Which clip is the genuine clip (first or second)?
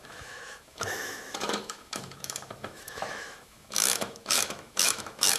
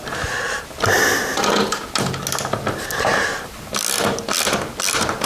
second